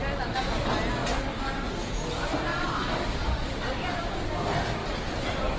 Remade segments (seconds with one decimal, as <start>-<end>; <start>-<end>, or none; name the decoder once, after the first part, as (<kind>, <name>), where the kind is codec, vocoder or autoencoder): 2.5-4.1 (vocoder, BigVGAN v2)